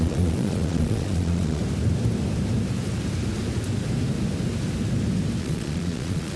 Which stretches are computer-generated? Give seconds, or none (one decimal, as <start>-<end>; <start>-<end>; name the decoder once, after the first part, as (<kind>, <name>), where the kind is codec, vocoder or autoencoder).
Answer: 0.0-1.6 (vocoder, Vocos); 5.4-6.4